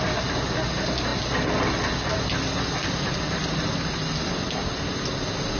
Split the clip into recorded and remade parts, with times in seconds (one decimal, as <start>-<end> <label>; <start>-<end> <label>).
0.0-5.6 recorded